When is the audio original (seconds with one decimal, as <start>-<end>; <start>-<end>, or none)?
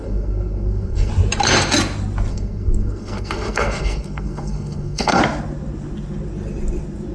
1.1-2.3; 5.2-7.1